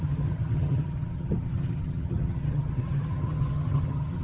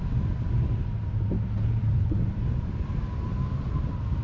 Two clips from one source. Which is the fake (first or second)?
first